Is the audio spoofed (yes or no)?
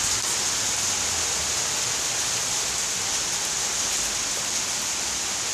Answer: no